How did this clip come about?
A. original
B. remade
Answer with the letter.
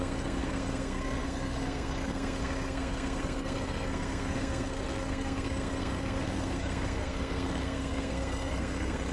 B